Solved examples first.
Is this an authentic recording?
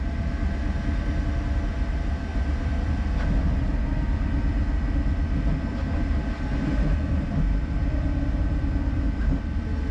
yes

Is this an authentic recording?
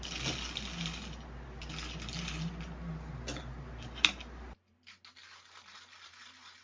yes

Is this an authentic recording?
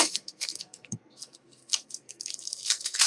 no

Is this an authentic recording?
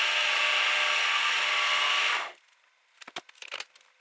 yes